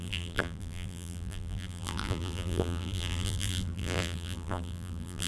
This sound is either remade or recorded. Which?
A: remade